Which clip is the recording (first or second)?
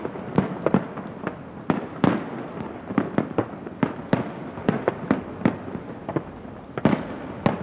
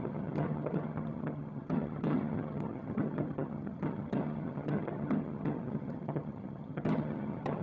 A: first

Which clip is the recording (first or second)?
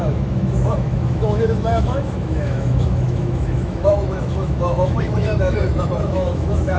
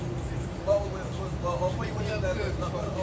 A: second